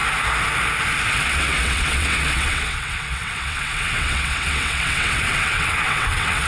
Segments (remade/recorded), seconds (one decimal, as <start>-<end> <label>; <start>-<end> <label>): 0.0-1.1 recorded; 1.1-6.5 remade